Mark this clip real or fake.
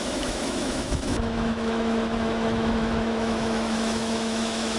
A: fake